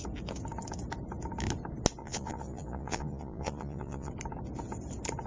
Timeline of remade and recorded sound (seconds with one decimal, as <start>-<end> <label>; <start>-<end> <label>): 0.0-2.0 recorded; 2.0-4.1 remade; 4.1-5.3 recorded